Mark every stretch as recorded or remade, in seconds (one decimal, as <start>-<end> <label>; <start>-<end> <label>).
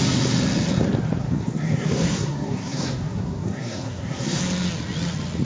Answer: 0.0-1.2 recorded; 1.2-4.4 remade; 4.4-5.4 recorded